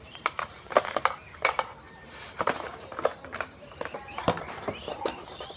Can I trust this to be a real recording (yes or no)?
no